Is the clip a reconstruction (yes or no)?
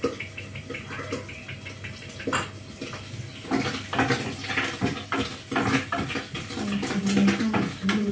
no